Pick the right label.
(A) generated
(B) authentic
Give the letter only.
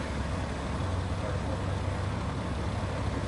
B